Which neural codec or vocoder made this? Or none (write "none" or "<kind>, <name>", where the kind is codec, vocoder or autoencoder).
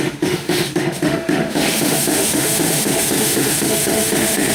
autoencoder, DAC-VAE